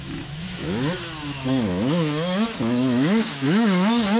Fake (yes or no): yes